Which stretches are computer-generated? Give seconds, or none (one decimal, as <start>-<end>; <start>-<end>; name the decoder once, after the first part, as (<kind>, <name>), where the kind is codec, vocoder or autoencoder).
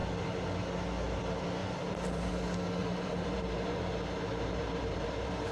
1.6-2.3 (vocoder, BigVGAN v2); 2.8-5.5